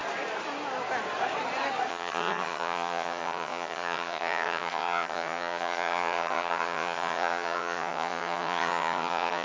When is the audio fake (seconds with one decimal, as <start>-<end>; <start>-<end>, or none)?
1.9-9.4